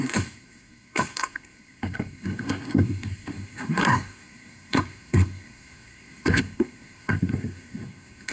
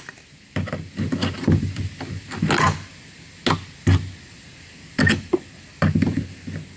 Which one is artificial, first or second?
first